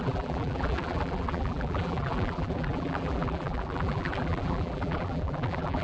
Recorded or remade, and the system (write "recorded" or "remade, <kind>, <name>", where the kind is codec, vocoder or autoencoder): remade, vocoder, BigVGAN v2